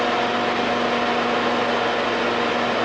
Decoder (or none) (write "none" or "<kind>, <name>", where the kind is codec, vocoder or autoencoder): none